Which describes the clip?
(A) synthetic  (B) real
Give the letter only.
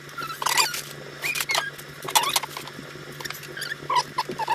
B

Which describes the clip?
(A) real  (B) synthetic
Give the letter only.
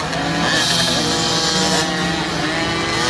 A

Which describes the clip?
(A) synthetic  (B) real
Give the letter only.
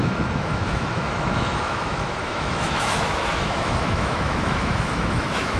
A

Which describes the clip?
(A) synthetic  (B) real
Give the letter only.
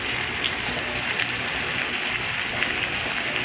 B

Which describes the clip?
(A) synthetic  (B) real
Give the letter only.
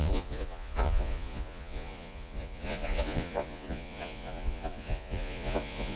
A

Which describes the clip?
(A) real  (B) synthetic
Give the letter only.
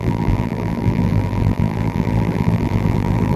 B